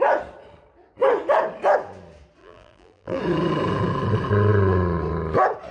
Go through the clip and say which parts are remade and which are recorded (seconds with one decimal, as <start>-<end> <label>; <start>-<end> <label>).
0.0-2.4 recorded; 2.4-3.2 remade; 3.2-5.7 recorded